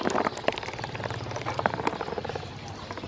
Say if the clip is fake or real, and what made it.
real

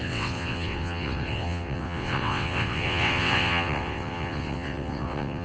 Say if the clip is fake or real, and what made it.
fake, vocoder, WaveNeXt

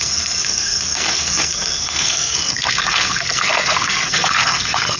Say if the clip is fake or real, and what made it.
fake, codec, SNAC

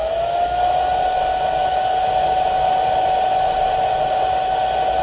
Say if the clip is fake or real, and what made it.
real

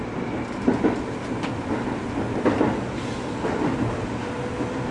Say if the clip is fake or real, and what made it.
real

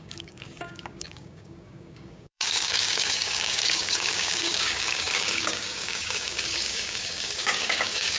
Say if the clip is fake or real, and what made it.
fake, codec, DAC